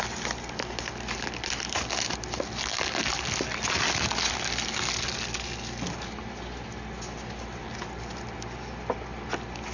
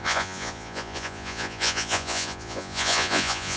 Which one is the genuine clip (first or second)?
first